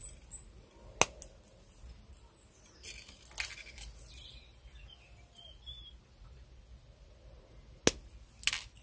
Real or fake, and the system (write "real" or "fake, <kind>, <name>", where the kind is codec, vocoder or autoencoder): real